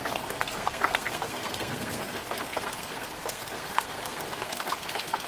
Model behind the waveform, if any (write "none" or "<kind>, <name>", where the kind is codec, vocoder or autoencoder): codec, SNAC